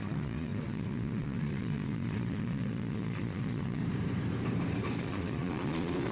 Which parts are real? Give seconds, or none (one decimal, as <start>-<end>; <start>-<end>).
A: 3.8-5.0